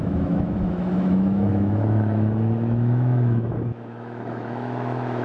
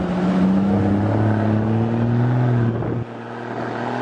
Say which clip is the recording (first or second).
second